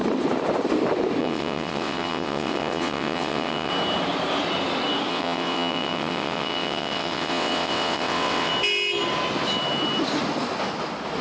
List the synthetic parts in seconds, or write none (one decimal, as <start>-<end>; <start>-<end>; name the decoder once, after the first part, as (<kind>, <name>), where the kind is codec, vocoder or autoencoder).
1.2-3.7 (vocoder, WaveNeXt); 5.1-8.5